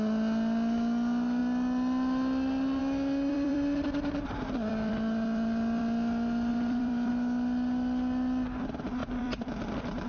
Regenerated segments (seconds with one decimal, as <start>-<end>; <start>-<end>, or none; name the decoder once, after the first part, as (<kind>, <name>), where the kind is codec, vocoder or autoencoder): 3.3-5.8 (vocoder, BigVGAN v2); 6.5-7.1; 9.0-10.1